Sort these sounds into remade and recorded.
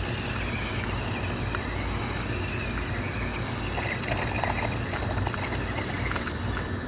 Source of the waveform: recorded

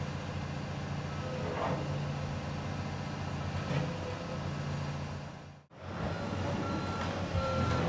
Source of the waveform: recorded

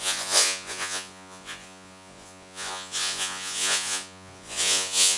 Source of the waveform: remade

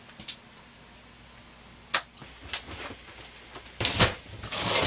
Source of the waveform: recorded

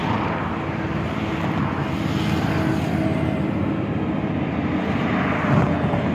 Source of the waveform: recorded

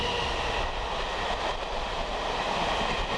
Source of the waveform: recorded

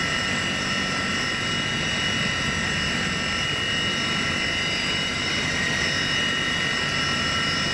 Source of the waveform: recorded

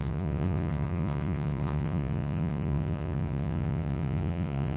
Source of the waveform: remade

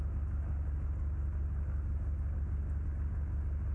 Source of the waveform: recorded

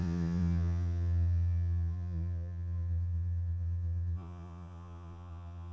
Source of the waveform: remade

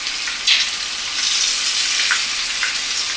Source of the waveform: recorded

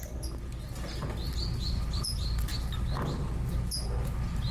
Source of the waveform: recorded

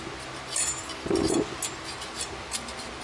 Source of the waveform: recorded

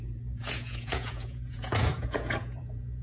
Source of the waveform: remade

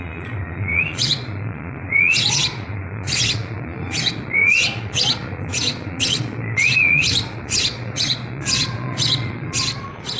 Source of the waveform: remade